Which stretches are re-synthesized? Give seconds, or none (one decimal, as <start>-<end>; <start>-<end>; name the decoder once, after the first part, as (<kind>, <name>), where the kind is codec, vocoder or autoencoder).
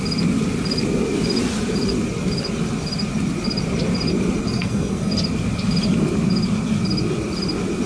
4.4-5.1 (codec, SNAC)